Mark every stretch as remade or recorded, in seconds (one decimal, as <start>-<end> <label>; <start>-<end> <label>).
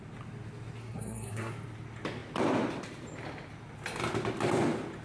0.0-0.8 recorded; 0.8-1.5 remade; 1.5-5.0 recorded